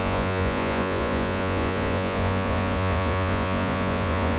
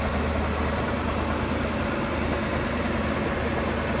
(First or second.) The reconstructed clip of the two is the first